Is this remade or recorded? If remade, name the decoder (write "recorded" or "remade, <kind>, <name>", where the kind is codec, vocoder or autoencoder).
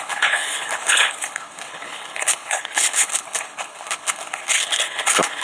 remade, codec, HILCodec